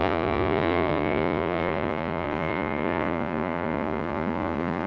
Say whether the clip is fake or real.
fake